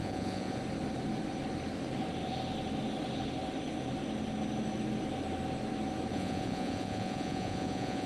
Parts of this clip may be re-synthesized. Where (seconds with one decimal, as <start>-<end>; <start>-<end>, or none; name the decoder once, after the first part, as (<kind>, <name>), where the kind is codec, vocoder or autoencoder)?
0.0-0.6 (vocoder, Vocos); 6.1-8.1